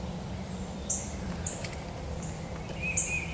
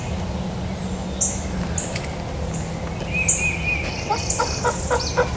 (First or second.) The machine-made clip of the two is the first